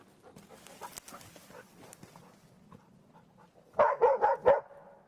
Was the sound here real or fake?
real